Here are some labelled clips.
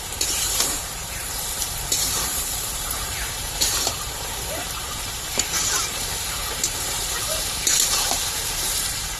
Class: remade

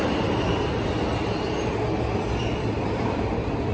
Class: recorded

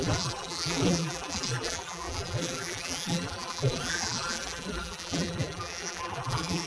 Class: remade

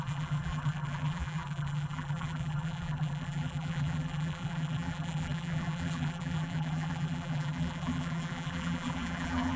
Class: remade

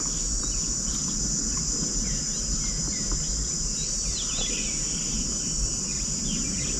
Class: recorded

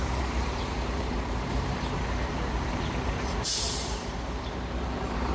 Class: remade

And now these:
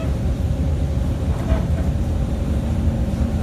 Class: remade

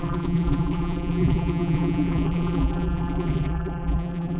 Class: remade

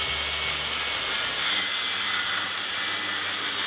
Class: recorded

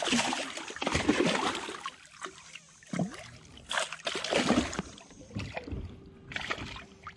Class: remade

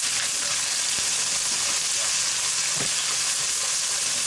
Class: recorded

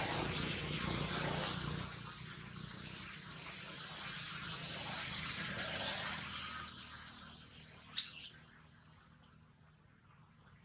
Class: recorded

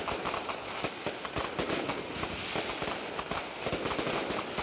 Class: recorded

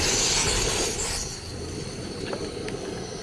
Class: recorded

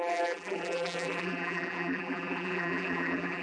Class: remade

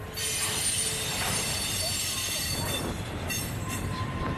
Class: remade